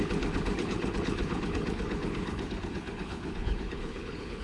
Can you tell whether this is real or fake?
fake